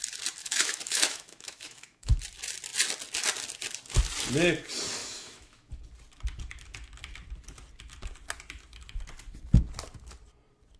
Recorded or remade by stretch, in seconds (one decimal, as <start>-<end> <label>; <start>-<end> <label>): 0.0-0.4 recorded; 0.4-2.2 remade; 2.2-5.0 recorded; 5.0-5.7 remade; 5.7-10.8 recorded